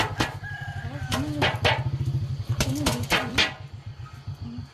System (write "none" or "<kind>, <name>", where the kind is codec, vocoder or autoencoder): none